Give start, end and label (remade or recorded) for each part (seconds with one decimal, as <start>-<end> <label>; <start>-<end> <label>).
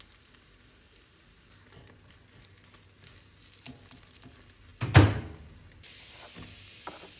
0.0-7.2 recorded